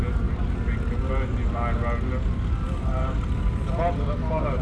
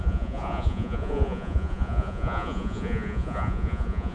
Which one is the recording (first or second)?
first